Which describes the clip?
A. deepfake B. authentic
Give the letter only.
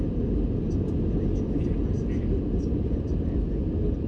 B